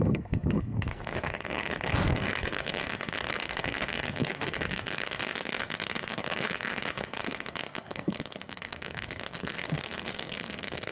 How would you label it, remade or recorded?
remade